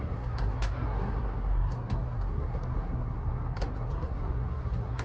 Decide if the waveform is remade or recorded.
remade